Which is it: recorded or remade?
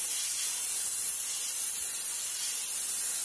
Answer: recorded